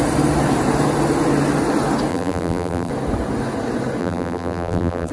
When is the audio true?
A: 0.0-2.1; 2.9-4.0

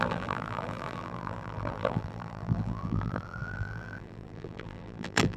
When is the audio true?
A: none

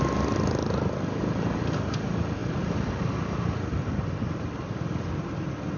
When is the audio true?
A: 0.0-2.4; 5.3-5.8